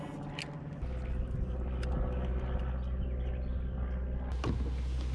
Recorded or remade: recorded